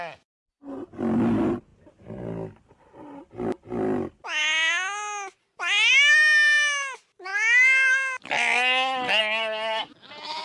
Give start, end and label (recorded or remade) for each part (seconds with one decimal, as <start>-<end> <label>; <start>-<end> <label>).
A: 0.0-10.4 recorded